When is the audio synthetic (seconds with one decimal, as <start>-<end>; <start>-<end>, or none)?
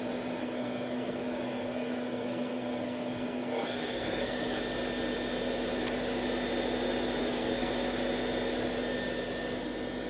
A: 0.4-4.6; 7.2-7.7